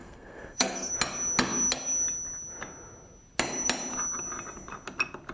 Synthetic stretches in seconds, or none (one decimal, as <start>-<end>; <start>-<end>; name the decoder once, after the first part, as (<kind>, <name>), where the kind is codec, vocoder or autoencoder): 0.0-0.9 (codec, SNAC)